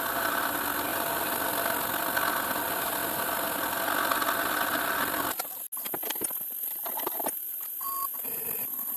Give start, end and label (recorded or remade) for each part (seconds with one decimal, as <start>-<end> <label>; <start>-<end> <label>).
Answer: 0.0-0.9 recorded; 0.9-1.5 remade; 1.5-9.0 recorded